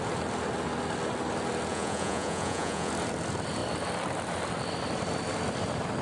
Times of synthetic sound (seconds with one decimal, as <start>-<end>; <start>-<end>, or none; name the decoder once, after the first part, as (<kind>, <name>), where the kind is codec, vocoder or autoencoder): 1.7-2.9 (vocoder, Vocos)